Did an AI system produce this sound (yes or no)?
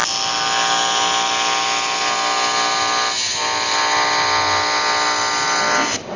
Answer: no